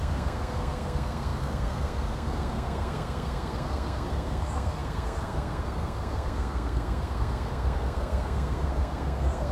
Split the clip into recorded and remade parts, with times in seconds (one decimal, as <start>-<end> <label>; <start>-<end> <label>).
0.0-9.5 remade